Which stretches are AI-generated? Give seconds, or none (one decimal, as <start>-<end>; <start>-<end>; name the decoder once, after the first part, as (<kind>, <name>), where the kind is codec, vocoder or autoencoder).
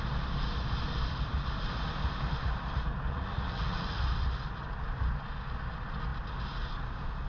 3.1-4.0 (vocoder, Vocos)